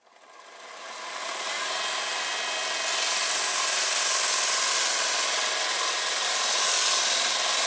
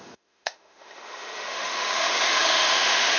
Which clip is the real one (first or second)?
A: first